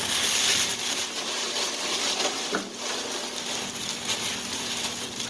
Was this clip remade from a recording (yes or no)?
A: no